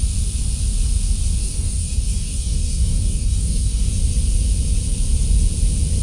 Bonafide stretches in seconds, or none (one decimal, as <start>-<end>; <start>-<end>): 0.0-1.4; 3.9-6.0